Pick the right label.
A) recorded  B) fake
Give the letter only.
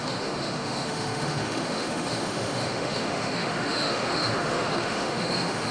B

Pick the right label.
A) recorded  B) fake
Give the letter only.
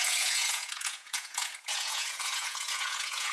B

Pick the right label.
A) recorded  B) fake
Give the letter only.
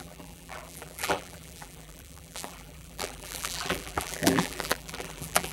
B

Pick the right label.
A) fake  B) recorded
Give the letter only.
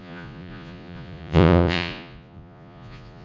A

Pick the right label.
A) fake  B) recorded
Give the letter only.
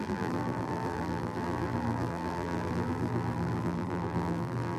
A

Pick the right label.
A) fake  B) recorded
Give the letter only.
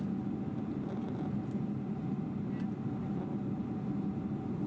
B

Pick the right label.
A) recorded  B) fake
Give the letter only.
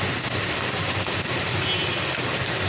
A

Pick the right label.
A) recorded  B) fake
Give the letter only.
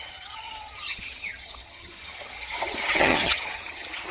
B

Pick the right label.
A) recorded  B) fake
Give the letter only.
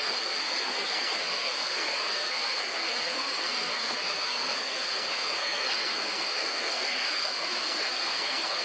B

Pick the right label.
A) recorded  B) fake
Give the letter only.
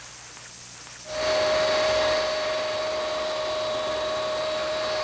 A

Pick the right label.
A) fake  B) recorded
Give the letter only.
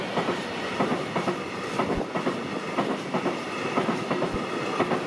B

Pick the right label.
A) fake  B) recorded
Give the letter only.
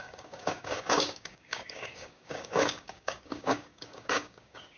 A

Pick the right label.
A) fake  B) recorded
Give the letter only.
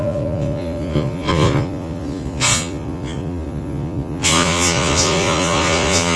A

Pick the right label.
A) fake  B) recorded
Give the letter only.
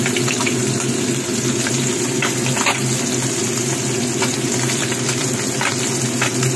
B